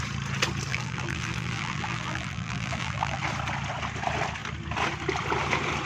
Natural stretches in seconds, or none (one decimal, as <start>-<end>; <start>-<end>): 0.0-0.7; 3.2-5.9